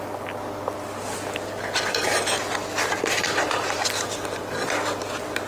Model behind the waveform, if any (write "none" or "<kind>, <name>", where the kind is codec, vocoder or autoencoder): vocoder, BigVGAN v2